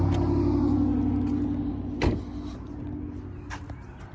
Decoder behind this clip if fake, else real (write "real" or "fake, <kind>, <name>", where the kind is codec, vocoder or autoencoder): real